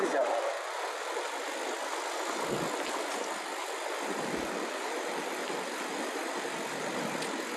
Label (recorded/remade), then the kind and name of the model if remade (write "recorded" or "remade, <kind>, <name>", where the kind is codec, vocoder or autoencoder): recorded